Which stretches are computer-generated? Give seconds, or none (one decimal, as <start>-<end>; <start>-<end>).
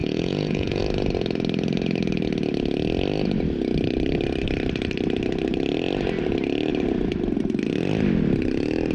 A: 0.0-0.8